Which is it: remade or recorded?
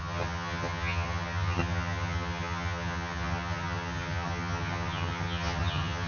remade